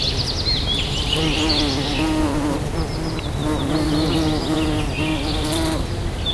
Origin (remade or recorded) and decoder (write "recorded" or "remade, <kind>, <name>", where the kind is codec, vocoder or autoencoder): recorded